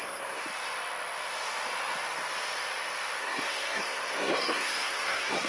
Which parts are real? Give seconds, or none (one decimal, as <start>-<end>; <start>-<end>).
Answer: 0.4-3.2